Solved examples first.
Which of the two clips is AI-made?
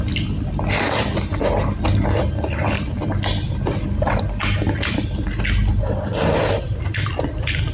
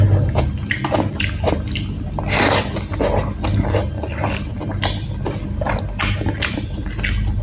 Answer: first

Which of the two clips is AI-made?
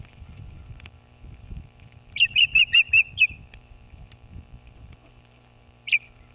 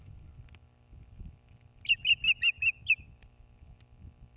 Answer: first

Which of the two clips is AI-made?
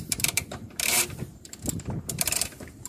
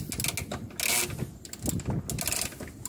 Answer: first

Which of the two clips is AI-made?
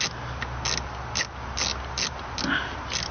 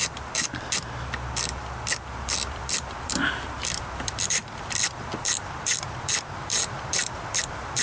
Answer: second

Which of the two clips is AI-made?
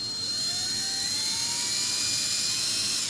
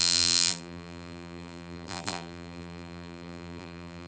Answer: second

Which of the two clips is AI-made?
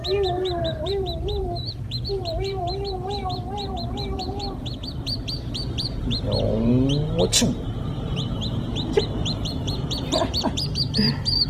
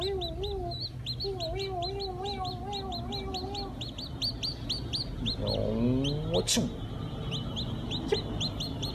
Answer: first